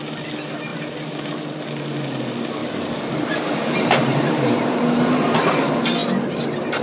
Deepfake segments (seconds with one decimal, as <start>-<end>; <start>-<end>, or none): 0.7-1.6; 2.6-5.3